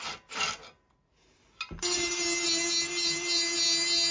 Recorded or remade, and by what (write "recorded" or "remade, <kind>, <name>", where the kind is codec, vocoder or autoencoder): recorded